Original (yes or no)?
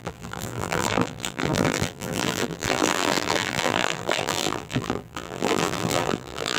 no